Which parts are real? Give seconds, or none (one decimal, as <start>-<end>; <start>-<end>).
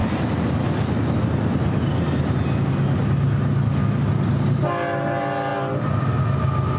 0.0-6.8